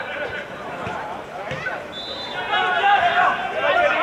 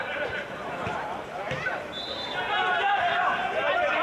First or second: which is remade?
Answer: second